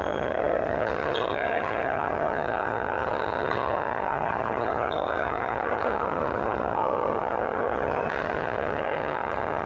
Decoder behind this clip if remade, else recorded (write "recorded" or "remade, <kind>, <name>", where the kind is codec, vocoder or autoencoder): remade, vocoder, HiFi-GAN